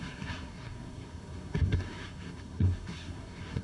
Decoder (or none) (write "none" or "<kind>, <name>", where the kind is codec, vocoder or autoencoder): codec, SNAC